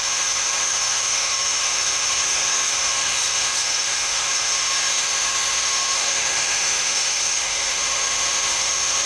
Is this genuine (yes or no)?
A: no